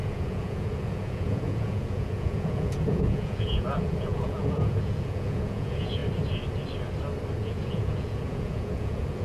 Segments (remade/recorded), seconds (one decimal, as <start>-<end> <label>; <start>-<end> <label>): 0.0-6.0 remade; 6.0-7.4 recorded; 7.4-9.2 remade